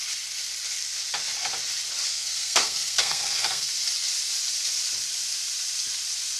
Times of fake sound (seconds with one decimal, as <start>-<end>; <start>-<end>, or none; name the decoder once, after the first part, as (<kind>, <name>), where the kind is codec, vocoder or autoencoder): 2.1-3.7 (codec, SNAC)